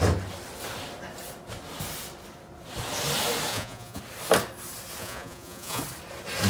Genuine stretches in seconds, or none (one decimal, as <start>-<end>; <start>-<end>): 0.0-3.5; 4.0-5.0; 5.8-6.5